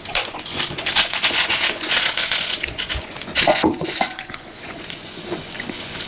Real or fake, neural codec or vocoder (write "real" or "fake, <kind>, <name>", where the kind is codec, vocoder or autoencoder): fake, vocoder, Vocos